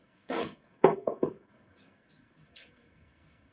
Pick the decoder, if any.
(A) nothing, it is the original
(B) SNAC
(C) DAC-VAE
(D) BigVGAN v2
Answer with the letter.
B